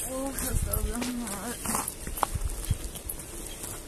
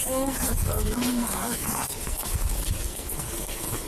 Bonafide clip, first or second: first